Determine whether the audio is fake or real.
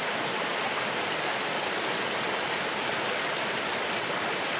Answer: real